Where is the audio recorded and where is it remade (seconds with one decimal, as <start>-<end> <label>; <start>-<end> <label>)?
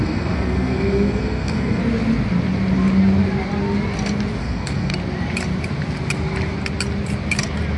0.0-1.8 remade; 1.8-4.4 recorded; 4.4-4.9 remade; 4.9-7.8 recorded